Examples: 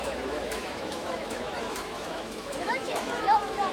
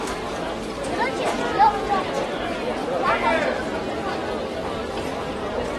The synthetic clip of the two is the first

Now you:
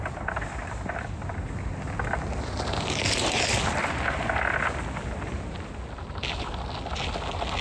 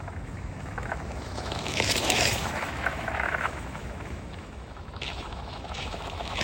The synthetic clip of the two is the second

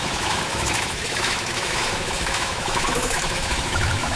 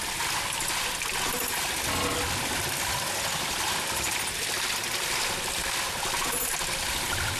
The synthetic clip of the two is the first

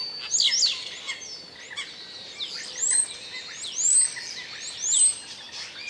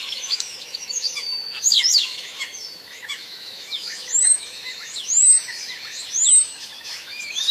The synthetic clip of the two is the second